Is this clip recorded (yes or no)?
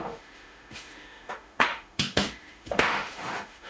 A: no